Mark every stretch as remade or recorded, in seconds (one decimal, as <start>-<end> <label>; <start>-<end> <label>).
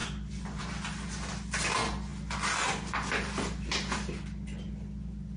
0.0-5.4 recorded